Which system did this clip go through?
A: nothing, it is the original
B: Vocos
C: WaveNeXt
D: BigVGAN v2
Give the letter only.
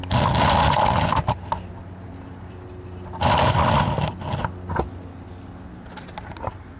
A